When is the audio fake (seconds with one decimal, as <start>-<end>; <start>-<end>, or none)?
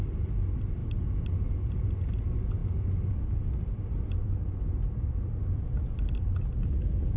none